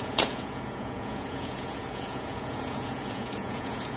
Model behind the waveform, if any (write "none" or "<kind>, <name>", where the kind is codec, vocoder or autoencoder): vocoder, Vocos